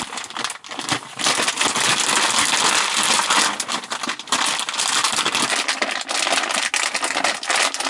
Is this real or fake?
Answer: real